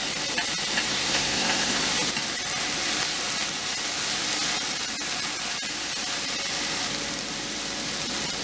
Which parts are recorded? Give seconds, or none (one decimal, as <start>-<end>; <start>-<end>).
0.0-0.9; 1.8-8.4